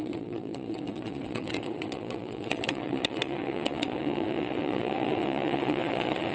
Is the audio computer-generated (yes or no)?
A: yes